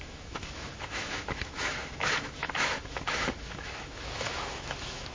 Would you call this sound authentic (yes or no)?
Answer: no